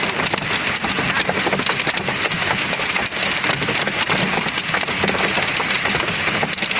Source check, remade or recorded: recorded